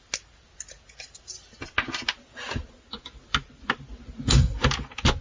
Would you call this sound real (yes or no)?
yes